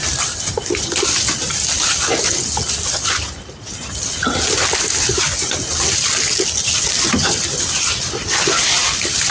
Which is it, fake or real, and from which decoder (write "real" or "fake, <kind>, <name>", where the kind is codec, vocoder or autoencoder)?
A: real